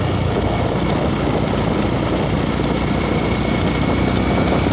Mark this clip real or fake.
real